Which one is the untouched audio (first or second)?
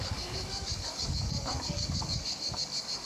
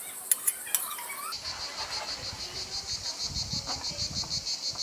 second